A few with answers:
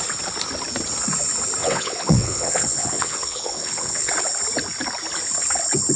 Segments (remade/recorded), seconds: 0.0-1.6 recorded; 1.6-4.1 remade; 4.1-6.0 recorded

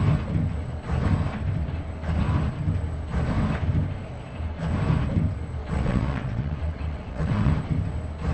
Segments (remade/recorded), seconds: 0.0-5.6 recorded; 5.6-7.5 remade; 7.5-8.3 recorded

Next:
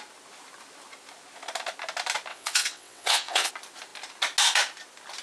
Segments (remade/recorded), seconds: 0.0-2.3 recorded; 2.3-3.5 remade; 3.5-5.2 recorded